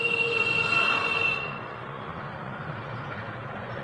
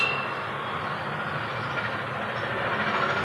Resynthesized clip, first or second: first